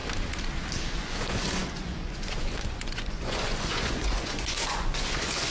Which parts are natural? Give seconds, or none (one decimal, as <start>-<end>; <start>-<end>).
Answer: 0.0-0.9